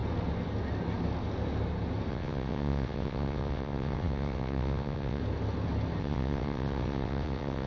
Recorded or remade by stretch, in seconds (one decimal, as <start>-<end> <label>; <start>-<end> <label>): 0.0-2.1 recorded; 2.1-5.2 remade; 5.2-6.0 recorded; 6.0-7.7 remade